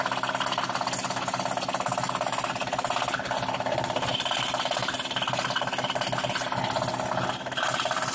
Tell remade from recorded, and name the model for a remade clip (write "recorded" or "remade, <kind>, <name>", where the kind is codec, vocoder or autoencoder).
recorded